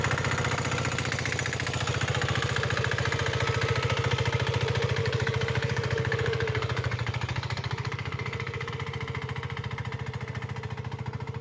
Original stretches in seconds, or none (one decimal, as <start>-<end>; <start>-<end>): 0.0-5.0; 8.7-11.4